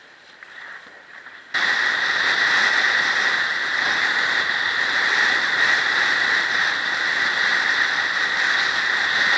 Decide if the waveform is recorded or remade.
recorded